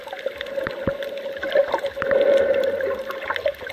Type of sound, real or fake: real